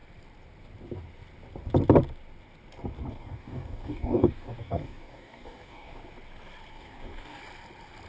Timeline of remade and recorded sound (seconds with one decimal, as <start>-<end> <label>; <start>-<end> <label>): 0.0-3.1 recorded; 3.1-6.0 remade; 6.0-6.7 recorded; 6.7-7.4 remade; 7.4-8.1 recorded